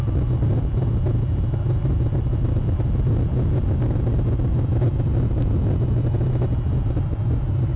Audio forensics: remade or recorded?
recorded